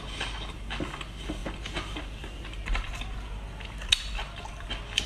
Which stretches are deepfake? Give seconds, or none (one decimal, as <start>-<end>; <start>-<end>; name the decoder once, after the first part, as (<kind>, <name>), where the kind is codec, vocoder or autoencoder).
none